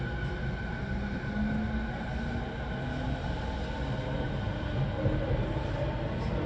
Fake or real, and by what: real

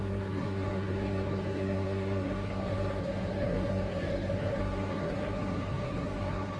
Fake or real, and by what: fake, codec, SNAC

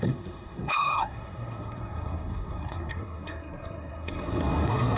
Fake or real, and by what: fake, codec, SNAC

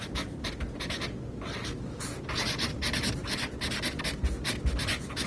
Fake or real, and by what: real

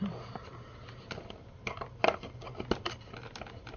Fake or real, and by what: real